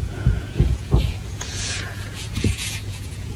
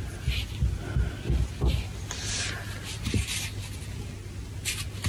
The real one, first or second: second